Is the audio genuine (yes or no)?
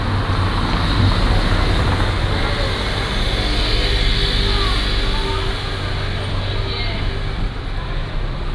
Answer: yes